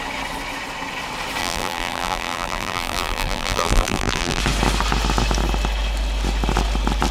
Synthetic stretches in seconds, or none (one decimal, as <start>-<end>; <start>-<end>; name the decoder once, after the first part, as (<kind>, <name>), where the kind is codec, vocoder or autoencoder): 1.4-4.4 (vocoder, BigVGAN v2)